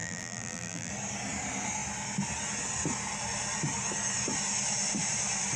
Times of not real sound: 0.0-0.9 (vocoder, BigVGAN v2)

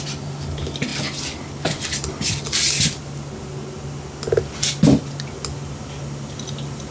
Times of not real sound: none